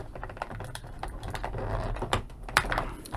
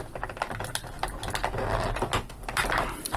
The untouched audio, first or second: second